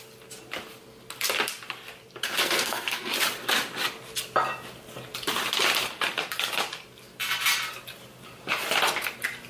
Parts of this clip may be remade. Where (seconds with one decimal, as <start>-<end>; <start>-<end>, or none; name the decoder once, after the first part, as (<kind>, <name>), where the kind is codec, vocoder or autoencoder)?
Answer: 2.4-3.1 (codec, SNAC)